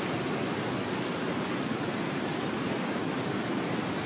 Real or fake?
real